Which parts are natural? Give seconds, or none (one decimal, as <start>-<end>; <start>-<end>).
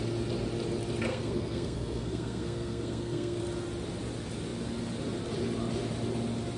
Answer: 0.0-1.1; 3.4-6.6